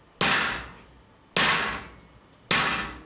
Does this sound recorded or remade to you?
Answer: recorded